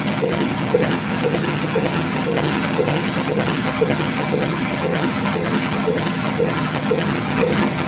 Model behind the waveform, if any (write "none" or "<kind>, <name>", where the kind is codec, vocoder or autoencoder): vocoder, HiFi-GAN